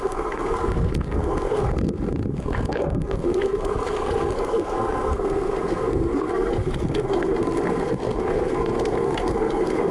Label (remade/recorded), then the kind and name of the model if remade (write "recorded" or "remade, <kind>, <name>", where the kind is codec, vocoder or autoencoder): remade, codec, SNAC